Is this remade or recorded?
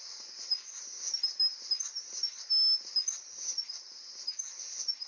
recorded